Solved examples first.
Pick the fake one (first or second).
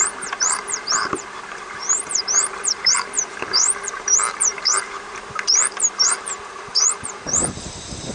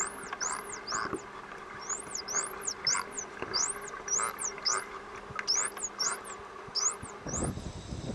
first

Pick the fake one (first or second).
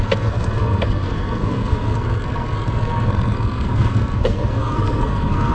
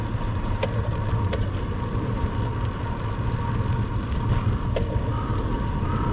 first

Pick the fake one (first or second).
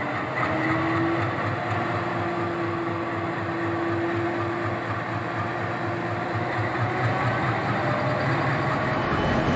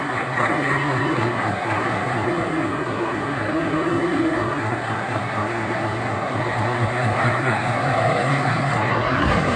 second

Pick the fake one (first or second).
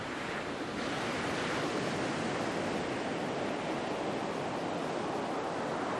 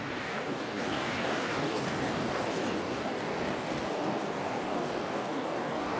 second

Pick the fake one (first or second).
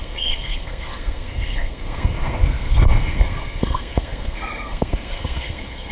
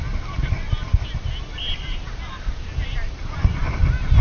first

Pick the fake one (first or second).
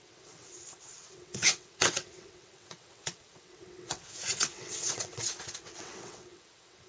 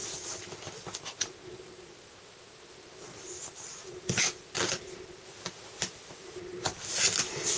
first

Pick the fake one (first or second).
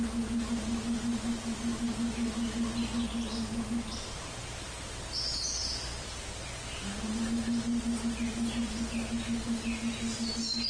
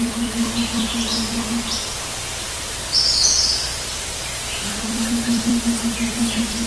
second